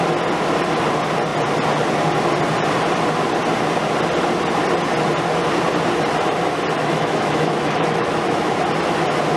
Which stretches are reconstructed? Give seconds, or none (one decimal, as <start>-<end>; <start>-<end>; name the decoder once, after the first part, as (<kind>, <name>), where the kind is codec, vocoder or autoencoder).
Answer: 6.8-8.5 (autoencoder, DAC-VAE)